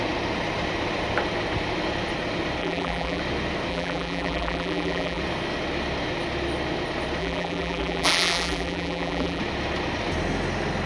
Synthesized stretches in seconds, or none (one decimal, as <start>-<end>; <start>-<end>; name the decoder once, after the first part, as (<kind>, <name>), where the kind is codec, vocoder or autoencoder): 2.6-3.2 (vocoder, BigVGAN v2); 3.7-5.2; 7.2-9.4